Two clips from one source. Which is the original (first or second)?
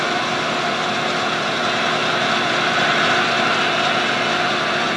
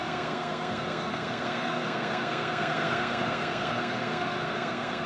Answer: first